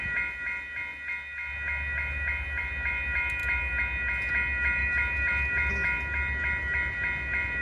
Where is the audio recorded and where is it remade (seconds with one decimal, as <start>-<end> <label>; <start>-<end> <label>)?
0.0-7.6 recorded